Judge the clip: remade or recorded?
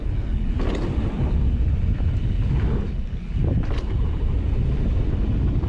recorded